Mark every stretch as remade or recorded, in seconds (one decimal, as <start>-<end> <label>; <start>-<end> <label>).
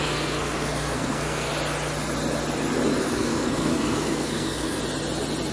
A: 0.0-1.5 remade; 1.5-3.0 recorded; 3.0-4.8 remade; 4.8-5.5 recorded